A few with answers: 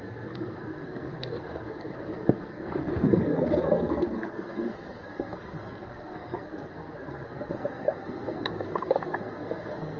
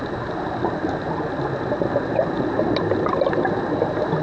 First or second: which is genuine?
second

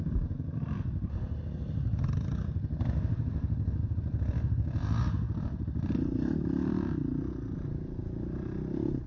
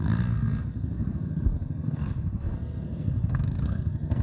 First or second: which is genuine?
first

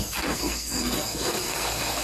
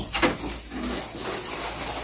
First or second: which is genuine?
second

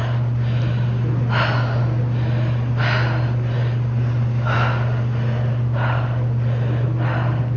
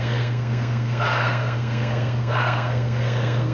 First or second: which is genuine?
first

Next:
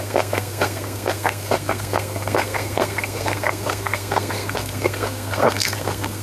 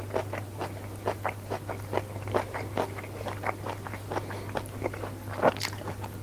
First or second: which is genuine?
second